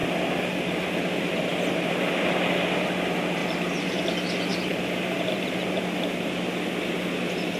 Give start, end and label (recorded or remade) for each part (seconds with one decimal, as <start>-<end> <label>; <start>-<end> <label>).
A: 0.0-3.4 recorded; 3.4-4.1 remade; 4.1-4.5 recorded; 4.5-5.8 remade; 5.8-7.6 recorded